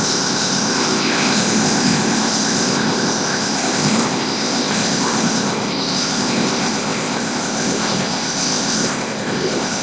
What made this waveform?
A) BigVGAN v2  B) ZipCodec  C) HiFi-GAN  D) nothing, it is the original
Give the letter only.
B